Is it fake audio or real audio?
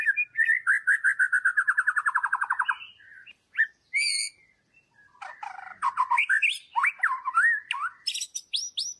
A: real